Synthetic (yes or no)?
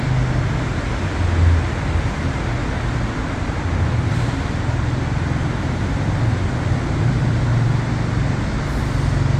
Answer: no